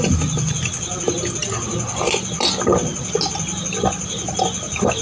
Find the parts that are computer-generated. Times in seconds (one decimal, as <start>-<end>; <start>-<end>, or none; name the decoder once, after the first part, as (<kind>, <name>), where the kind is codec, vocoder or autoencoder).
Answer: none